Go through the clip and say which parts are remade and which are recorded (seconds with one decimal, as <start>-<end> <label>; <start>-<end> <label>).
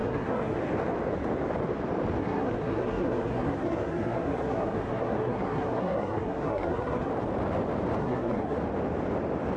0.0-0.6 remade; 0.6-2.2 recorded; 2.2-7.1 remade; 7.1-8.0 recorded; 8.0-8.6 remade; 8.6-9.6 recorded